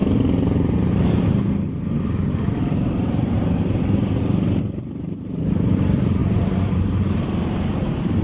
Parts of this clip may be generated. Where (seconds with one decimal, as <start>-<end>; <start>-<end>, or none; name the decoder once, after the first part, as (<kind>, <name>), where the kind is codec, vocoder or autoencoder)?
2.3-8.2 (vocoder, BigVGAN v2)